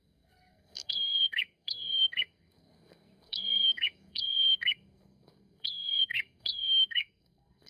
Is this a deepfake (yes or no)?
yes